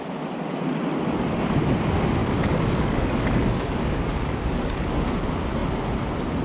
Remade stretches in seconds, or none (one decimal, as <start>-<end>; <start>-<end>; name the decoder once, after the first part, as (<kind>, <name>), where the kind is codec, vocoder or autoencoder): 2.2-5.1 (codec, DAC)